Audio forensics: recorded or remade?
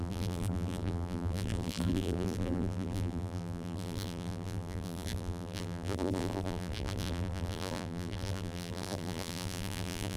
remade